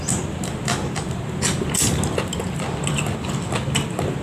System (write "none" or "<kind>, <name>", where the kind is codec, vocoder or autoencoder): none